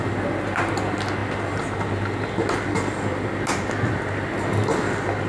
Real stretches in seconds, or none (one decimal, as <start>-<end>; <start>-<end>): 0.0-5.3